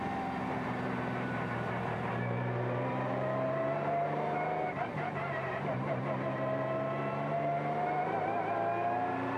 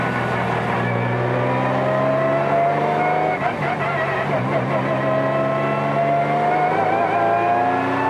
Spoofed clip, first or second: first